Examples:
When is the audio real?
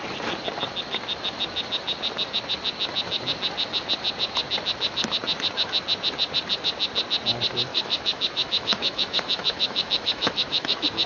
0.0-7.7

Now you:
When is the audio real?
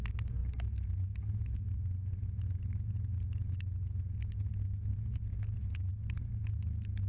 0.0-4.9; 5.9-7.1